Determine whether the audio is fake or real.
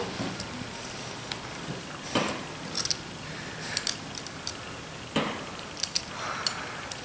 real